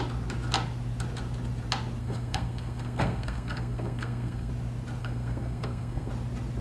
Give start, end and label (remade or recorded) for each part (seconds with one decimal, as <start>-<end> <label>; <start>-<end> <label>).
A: 0.0-2.0 recorded; 2.0-4.5 remade; 4.5-5.0 recorded; 5.0-6.1 remade; 6.1-6.6 recorded